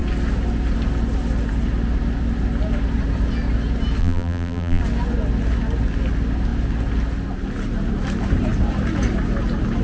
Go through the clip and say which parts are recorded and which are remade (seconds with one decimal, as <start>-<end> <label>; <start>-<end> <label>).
0.0-4.0 recorded; 4.0-4.8 remade; 4.8-9.8 recorded